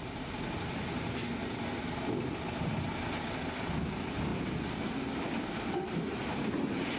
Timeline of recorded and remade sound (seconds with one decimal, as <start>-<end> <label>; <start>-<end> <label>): 0.0-7.0 recorded